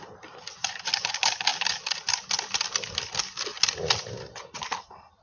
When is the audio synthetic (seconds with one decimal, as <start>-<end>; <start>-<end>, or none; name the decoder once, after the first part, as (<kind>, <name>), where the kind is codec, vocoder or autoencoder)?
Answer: 0.6-1.1 (vocoder, BigVGAN v2)